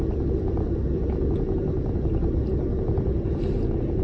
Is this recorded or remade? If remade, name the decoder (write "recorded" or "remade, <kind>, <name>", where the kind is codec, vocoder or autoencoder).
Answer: recorded